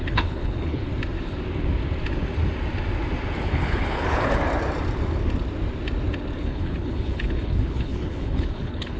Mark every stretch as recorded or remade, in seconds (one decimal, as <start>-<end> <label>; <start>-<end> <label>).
0.0-0.9 remade; 0.9-3.4 recorded; 3.4-4.4 remade; 4.4-6.4 recorded; 6.4-9.0 remade